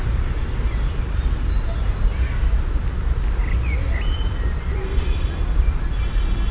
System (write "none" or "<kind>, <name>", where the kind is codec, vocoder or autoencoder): none